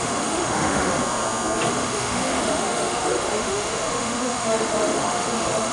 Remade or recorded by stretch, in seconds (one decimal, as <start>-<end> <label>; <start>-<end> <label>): 0.0-1.0 remade; 1.0-1.7 recorded; 1.7-5.7 remade